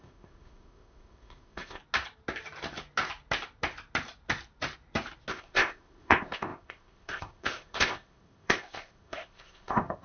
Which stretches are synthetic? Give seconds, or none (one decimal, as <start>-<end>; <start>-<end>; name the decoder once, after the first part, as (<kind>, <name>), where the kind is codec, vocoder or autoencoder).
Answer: 0.0-1.8 (codec, ZipCodec); 5.3-10.0